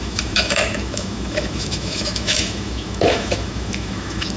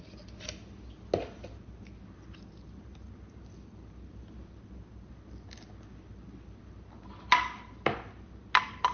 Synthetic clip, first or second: first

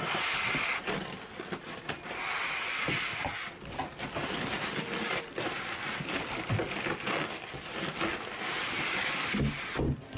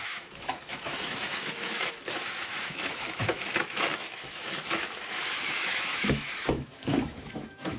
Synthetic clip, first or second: second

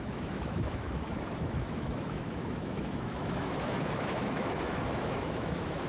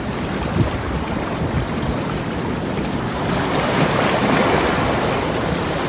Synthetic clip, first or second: first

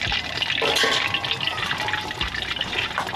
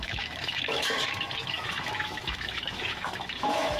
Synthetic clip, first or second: second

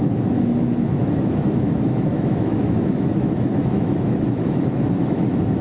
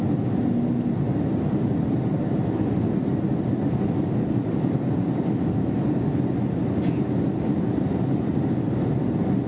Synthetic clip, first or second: first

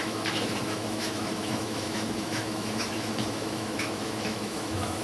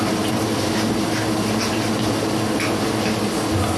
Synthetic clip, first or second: first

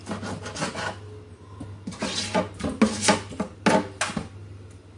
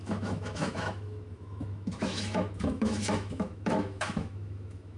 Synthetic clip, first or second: second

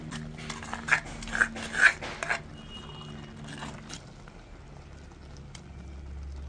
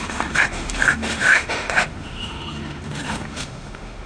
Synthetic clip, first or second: second